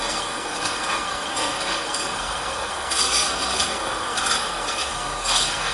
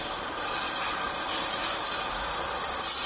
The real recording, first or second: second